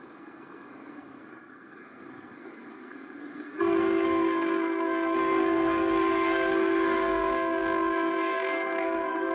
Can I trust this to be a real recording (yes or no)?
no